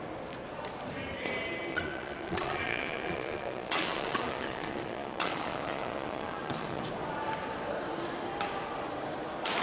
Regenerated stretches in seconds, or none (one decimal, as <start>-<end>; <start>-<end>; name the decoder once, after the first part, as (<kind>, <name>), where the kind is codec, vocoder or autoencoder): 1.7-6.8 (vocoder, Vocos)

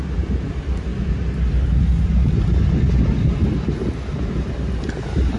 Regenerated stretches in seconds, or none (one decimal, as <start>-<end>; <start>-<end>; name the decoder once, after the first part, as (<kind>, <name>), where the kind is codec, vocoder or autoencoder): 0.0-0.9 (vocoder, BigVGAN v2); 4.1-5.4